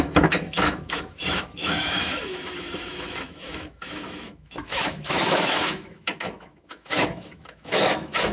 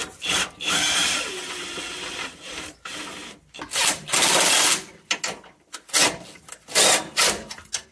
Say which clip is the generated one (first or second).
first